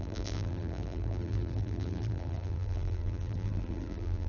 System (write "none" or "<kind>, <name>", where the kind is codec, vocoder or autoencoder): vocoder, BigVGAN v2